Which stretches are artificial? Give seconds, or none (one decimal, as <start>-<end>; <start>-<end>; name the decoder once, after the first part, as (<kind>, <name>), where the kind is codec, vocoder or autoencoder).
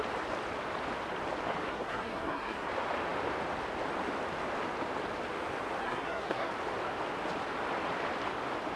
1.7-2.7 (codec, SNAC); 5.8-6.5